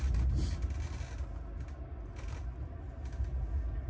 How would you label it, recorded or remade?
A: recorded